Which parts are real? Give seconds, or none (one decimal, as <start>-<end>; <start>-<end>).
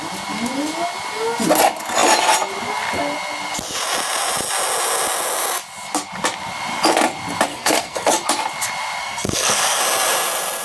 0.0-7.5; 8.1-9.0; 9.8-10.6